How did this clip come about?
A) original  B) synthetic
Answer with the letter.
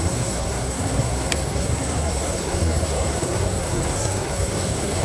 B